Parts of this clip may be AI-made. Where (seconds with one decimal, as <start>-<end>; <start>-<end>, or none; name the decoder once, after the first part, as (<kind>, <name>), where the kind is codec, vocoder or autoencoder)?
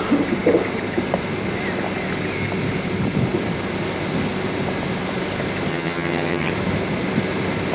5.7-6.5 (vocoder, HiFi-GAN)